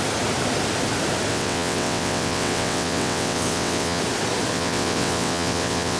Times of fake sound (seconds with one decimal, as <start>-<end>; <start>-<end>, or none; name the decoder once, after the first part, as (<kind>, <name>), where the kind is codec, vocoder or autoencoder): 1.3-4.0 (vocoder, WaveNeXt); 4.5-6.0